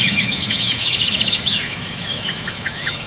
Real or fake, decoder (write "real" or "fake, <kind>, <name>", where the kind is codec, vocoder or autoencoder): fake, autoencoder, DAC-VAE